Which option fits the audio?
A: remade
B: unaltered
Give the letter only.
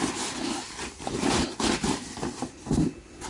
B